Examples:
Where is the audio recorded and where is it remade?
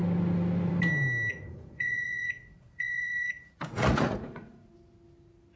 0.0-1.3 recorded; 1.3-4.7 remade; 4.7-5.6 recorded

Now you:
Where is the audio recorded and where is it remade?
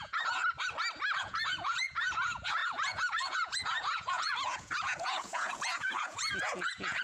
0.0-0.4 remade; 0.4-1.2 recorded; 1.2-7.0 remade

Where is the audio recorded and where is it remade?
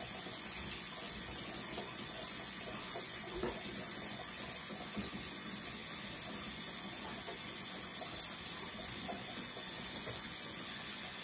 0.0-5.8 remade; 5.8-6.5 recorded; 6.5-7.9 remade; 7.9-8.7 recorded; 8.7-11.2 remade